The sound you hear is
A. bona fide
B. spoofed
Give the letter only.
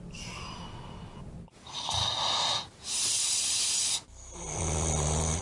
A